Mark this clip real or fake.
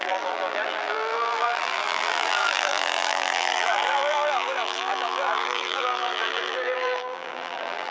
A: fake